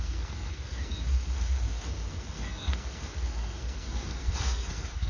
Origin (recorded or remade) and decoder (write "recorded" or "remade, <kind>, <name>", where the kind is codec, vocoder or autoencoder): remade, codec, SNAC